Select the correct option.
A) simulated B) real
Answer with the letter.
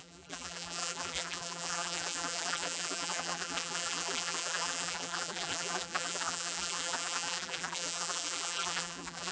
A